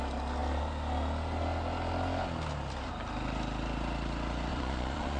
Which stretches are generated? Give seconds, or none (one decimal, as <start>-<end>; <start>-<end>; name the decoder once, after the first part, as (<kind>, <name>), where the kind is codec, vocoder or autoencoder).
4.5-5.2 (vocoder, Vocos)